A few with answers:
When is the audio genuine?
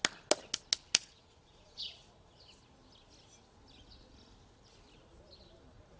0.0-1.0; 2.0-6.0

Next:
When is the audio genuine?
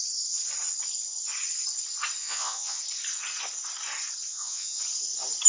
0.0-2.2; 2.8-4.3; 4.8-5.5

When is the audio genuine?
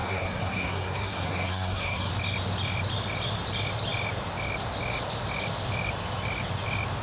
2.1-7.0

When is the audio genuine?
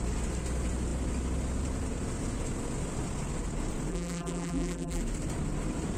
0.0-3.9; 5.0-6.0